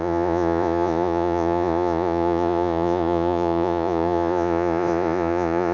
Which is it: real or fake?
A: fake